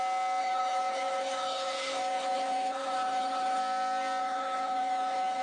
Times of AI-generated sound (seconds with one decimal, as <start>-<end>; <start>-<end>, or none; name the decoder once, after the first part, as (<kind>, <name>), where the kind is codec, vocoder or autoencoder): 0.4-3.6 (codec, HILCodec); 4.2-5.4